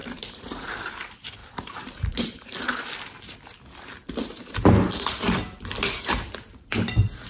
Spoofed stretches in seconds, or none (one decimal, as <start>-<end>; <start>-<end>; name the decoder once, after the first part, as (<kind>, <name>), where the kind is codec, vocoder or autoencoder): 0.0-0.9 (vocoder, BigVGAN v2); 1.4-2.9